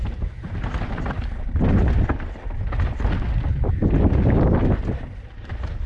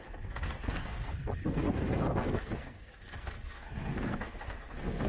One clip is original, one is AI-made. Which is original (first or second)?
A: first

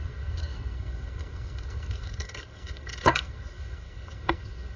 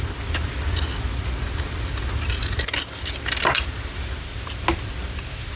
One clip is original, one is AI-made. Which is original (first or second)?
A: second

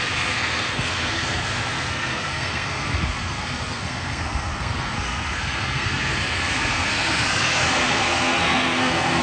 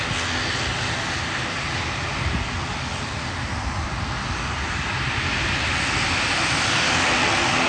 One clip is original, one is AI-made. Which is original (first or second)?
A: second